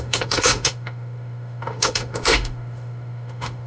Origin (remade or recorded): remade